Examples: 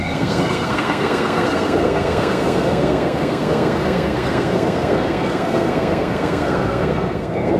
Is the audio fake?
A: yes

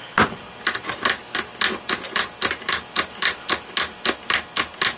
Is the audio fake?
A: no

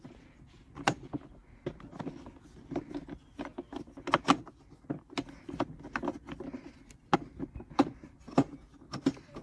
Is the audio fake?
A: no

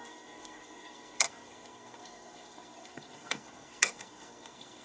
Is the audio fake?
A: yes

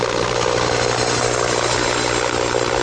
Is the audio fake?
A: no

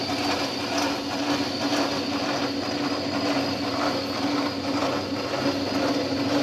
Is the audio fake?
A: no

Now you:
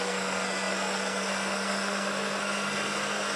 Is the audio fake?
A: yes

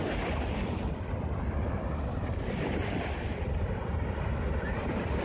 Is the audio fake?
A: no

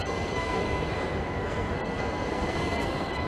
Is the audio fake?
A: yes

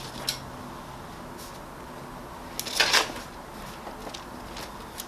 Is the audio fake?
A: no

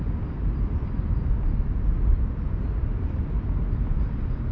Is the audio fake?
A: no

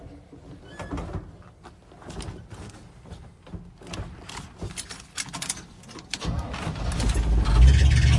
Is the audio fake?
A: no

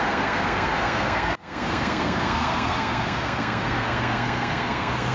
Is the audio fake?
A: yes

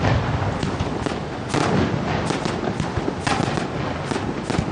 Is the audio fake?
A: no